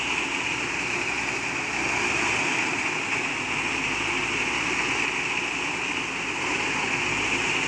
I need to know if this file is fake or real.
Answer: real